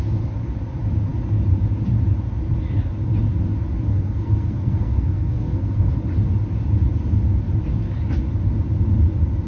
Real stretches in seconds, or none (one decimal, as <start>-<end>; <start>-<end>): 0.0-3.9; 5.9-9.5